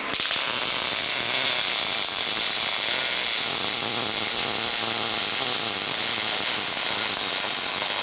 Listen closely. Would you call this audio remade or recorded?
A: recorded